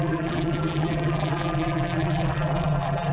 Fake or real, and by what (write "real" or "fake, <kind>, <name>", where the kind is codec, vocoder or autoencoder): fake, vocoder, BigVGAN v2